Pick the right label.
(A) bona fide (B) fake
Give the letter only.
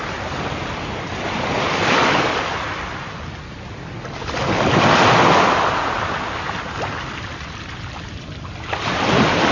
A